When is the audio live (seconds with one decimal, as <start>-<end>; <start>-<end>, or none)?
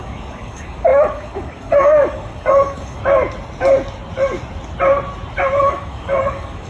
3.0-5.6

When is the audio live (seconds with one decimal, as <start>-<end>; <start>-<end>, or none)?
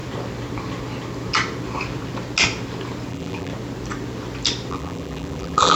0.0-3.1; 3.5-4.7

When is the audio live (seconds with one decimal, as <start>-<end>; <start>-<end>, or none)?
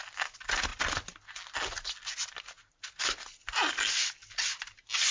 0.0-5.1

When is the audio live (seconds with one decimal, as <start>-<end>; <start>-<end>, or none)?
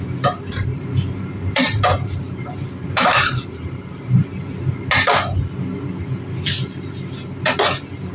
0.0-0.7; 4.8-8.1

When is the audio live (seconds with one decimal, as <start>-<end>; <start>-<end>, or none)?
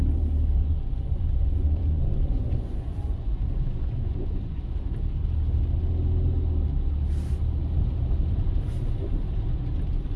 0.0-0.6; 4.8-10.2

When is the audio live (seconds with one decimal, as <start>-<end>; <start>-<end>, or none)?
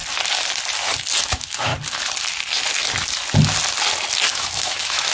0.0-1.2; 1.7-4.3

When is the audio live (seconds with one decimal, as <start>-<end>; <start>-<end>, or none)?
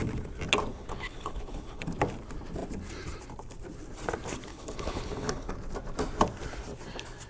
0.0-0.7; 1.8-4.5; 5.5-7.3